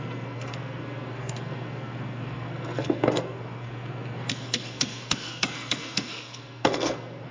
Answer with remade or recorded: remade